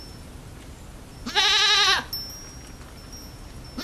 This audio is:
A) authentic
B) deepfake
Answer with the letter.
A